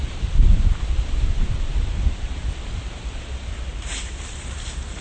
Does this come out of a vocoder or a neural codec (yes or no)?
yes